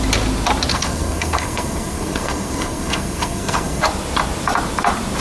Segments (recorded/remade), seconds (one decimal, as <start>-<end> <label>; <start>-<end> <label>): 0.0-0.7 recorded; 0.7-3.8 remade; 3.8-5.2 recorded